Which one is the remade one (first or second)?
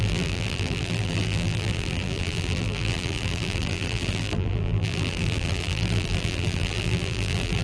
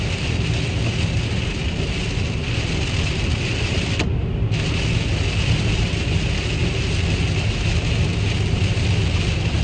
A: first